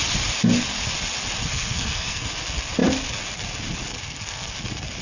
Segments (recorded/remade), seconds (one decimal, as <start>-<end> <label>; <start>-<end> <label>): 0.0-1.4 recorded; 1.4-2.3 remade; 2.3-3.9 recorded; 3.9-4.5 remade; 4.5-5.0 recorded